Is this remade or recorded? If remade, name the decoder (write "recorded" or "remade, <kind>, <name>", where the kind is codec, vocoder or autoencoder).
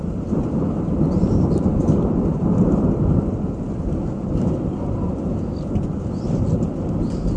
recorded